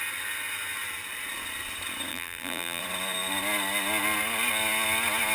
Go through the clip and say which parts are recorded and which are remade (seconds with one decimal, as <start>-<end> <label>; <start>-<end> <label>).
0.0-2.1 recorded; 2.1-2.8 remade; 2.8-5.3 recorded